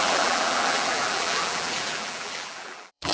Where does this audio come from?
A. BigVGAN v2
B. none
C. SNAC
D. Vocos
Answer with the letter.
A